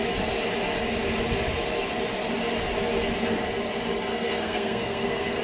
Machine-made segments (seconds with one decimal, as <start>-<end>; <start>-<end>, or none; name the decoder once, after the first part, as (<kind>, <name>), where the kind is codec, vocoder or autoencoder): 4.1-5.4 (codec, SNAC)